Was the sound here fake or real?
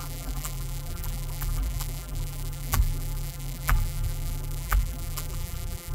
fake